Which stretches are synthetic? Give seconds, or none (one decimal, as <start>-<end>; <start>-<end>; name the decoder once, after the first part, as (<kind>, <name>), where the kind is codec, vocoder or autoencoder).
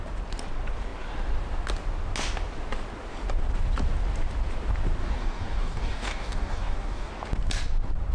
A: 5.0-7.1 (codec, DAC)